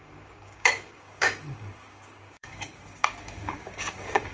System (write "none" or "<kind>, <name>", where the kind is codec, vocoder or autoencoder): codec, DAC